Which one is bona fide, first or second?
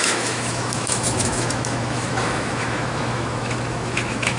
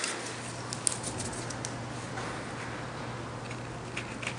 second